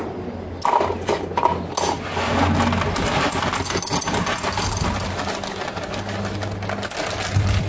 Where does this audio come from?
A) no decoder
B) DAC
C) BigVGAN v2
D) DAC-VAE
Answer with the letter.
A